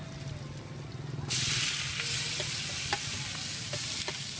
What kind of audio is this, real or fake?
real